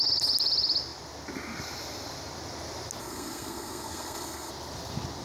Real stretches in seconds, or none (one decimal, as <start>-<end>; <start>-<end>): 0.0-3.0; 4.5-5.2